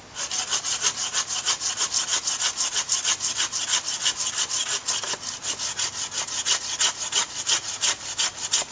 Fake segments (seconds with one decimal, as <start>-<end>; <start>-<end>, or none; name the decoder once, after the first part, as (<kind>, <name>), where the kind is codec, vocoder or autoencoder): none